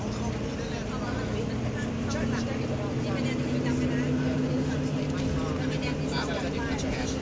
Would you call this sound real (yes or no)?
yes